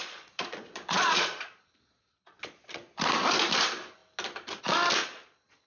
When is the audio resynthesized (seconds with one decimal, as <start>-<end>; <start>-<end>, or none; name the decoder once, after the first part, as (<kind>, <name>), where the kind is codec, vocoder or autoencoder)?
0.0-3.0 (vocoder, Vocos); 5.0-5.7